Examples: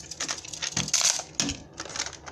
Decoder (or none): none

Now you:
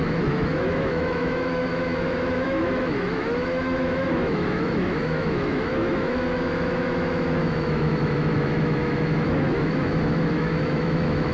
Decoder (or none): autoencoder, DAC-VAE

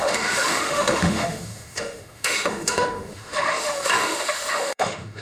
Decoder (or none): autoencoder, DAC-VAE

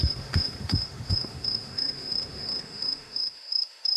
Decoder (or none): autoencoder, DAC-VAE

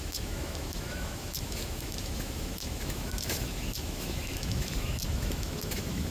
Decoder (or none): autoencoder, DAC-VAE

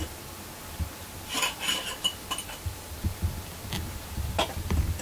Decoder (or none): none